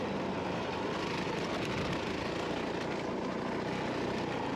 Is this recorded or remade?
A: recorded